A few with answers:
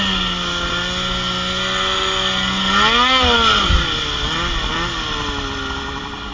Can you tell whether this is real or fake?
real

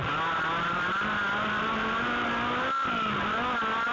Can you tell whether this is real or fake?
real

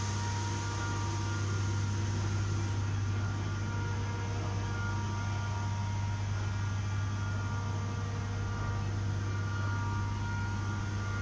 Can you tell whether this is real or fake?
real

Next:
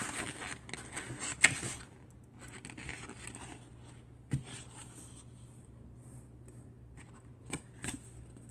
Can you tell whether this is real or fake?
real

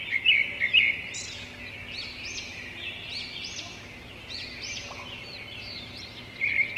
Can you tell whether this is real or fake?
real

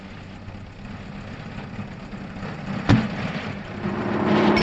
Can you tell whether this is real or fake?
real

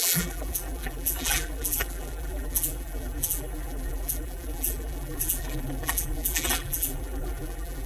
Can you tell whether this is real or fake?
fake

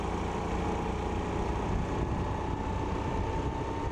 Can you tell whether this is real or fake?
real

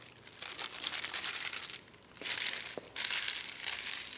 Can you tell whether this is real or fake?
real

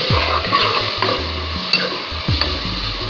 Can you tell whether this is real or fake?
real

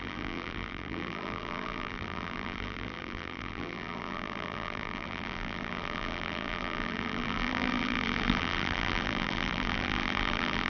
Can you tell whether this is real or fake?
fake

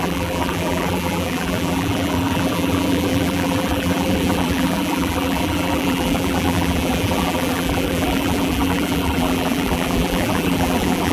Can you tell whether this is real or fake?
fake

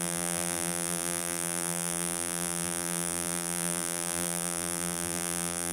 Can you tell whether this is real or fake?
fake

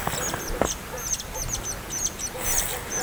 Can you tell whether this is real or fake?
real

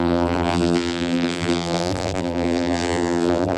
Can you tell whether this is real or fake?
fake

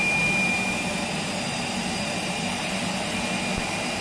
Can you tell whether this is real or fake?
fake